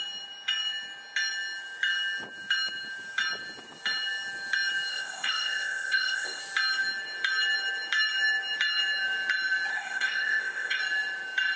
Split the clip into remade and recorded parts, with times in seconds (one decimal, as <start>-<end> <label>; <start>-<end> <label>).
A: 0.0-4.9 recorded; 4.9-6.4 remade; 6.4-9.7 recorded; 9.7-10.8 remade; 10.8-11.6 recorded